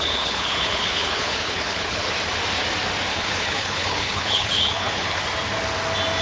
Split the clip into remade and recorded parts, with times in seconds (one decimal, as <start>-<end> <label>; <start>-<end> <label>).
0.0-2.1 remade; 2.1-3.1 recorded; 3.1-5.2 remade; 5.2-6.2 recorded